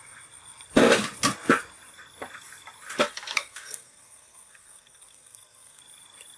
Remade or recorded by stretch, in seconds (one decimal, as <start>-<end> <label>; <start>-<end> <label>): 0.0-3.0 recorded; 3.0-5.8 remade; 5.8-6.4 recorded